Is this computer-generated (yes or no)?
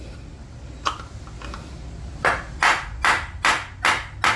no